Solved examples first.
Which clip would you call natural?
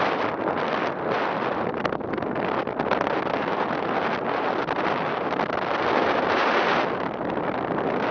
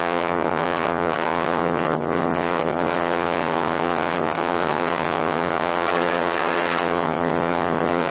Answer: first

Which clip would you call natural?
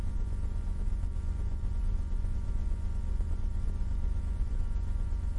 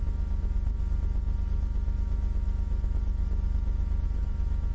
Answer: second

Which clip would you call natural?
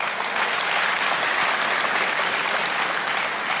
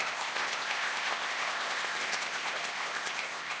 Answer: first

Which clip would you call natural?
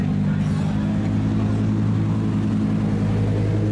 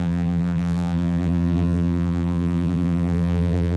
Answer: first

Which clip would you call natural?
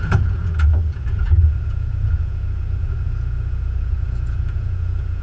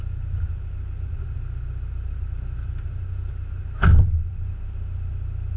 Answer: second